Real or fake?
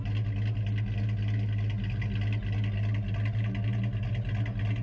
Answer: real